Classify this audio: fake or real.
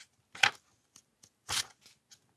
real